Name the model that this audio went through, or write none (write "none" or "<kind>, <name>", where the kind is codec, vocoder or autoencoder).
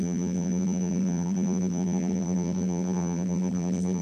vocoder, BigVGAN v2